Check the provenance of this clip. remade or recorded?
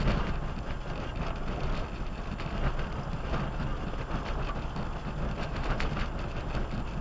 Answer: recorded